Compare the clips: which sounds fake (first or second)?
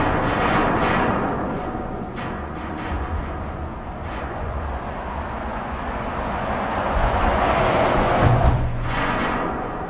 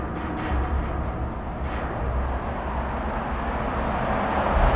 first